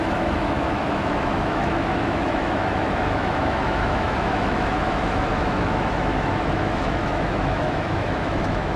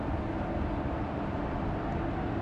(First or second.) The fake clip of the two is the first